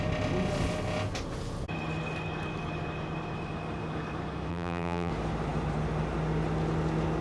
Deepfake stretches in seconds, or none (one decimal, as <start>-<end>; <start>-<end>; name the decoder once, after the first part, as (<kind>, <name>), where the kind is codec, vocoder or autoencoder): 4.5-5.1 (vocoder, BigVGAN v2)